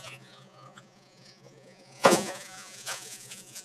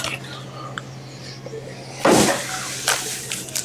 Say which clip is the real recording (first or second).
second